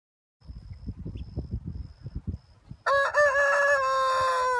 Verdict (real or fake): real